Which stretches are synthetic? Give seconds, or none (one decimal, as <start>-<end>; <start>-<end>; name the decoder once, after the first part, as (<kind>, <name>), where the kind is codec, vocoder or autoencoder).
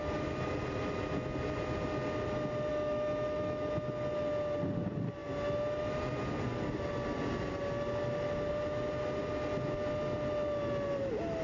2.7-3.7 (autoencoder, DAC-VAE)